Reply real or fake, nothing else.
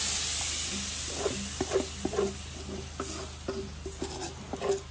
real